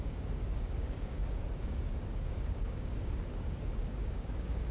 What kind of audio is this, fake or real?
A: fake